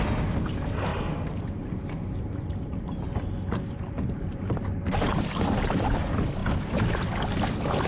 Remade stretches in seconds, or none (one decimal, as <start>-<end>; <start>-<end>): 0.9-3.0; 4.3-5.6